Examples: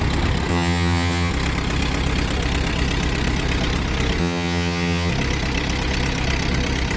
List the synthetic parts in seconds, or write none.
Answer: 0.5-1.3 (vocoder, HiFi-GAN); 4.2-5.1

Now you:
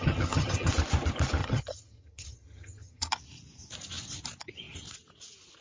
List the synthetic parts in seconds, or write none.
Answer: 0.0-0.7 (vocoder, HiFi-GAN); 1.4-3.1

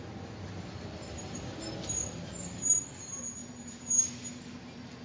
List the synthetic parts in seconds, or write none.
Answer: none

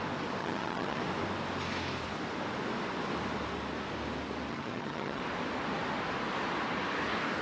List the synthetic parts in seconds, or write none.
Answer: 0.4-1.0 (vocoder, HiFi-GAN); 4.5-5.2

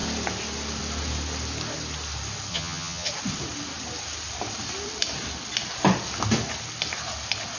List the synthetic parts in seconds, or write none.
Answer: 2.5-3.1 (vocoder, HiFi-GAN)

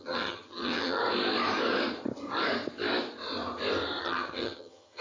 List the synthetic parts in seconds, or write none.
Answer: 0.0-1.0 (vocoder, HiFi-GAN); 4.0-5.0

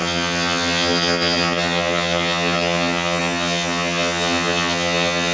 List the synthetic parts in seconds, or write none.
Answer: 0.0-5.3 (vocoder, HiFi-GAN)

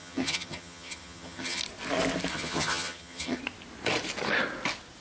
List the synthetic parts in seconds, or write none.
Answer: 0.0-1.6 (vocoder, HiFi-GAN); 2.3-3.4